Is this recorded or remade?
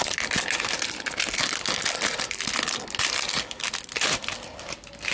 recorded